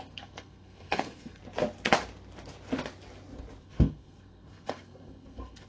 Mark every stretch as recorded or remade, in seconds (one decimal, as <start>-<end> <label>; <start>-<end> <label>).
0.0-1.4 remade; 1.4-3.6 recorded; 3.6-5.7 remade